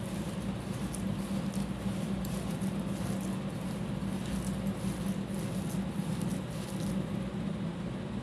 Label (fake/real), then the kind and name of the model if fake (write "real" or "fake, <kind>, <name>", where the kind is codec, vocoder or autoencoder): real